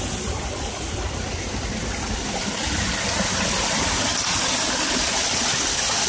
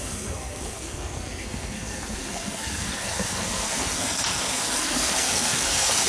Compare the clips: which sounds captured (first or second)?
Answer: first